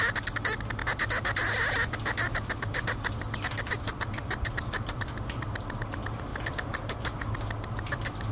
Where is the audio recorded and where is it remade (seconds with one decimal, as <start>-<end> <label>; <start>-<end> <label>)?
0.0-8.3 recorded